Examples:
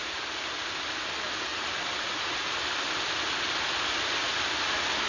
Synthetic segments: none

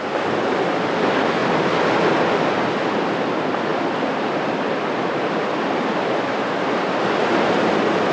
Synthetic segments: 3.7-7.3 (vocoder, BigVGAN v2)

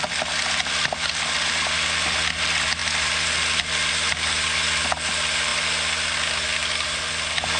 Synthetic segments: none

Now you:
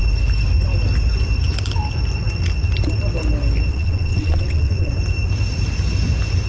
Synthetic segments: 3.7-4.9 (vocoder, WaveNeXt)

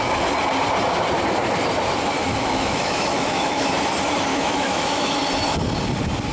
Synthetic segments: 2.3-3.7 (autoencoder, DAC-VAE); 4.3-5.1

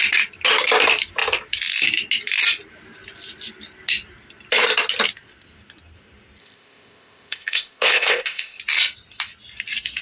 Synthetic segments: 6.4-8.6 (codec, ZipCodec)